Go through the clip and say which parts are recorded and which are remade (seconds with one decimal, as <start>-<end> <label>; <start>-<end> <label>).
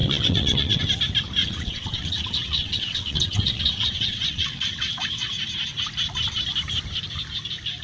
0.0-0.8 remade; 0.8-1.4 recorded; 1.4-5.3 remade; 5.3-7.8 recorded